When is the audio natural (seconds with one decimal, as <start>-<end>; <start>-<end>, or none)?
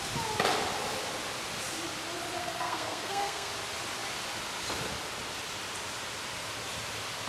0.0-2.4; 3.5-7.3